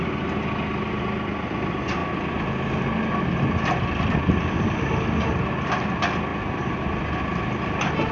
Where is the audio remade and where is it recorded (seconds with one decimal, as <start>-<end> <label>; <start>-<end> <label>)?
0.0-8.1 recorded